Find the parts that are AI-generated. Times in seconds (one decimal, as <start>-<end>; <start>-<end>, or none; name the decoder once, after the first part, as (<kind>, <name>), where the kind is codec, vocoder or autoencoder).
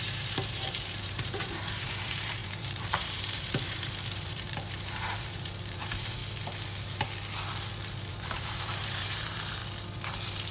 0.0-6.2 (vocoder, BigVGAN v2); 8.1-9.6